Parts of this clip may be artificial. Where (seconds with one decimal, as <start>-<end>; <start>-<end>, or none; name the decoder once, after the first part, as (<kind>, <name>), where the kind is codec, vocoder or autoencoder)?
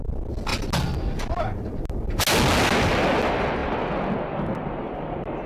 none